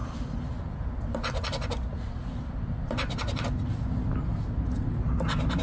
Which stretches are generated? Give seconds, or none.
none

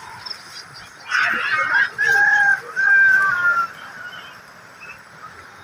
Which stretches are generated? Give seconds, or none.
none

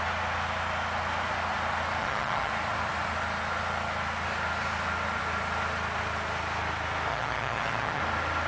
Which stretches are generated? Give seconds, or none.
2.0-2.5; 7.1-8.0